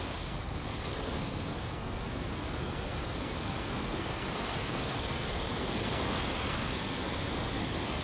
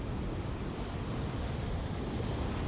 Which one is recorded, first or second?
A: second